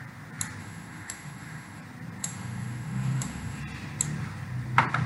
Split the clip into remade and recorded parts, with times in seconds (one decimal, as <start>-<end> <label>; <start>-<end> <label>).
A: 0.0-0.6 recorded; 0.6-1.8 remade; 1.8-2.2 recorded; 2.2-3.6 remade; 3.6-5.1 recorded